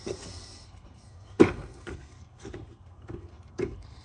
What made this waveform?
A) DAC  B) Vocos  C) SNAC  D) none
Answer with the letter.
C